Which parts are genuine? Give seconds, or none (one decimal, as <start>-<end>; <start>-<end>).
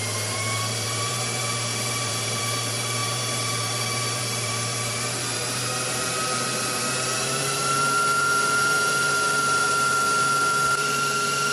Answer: none